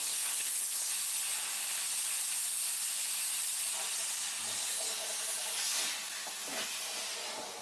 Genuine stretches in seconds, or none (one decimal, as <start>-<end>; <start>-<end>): 0.9-7.6